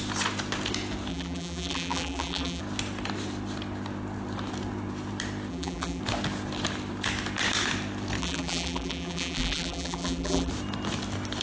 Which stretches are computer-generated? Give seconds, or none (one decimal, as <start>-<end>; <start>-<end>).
1.1-2.6; 5.5-6.0; 8.2-10.5